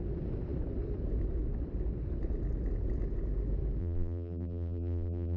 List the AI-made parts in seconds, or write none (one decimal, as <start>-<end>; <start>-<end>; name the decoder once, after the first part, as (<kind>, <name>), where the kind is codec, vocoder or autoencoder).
3.8-5.4 (vocoder, BigVGAN v2)